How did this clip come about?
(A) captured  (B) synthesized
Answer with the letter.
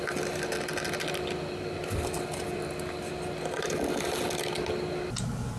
A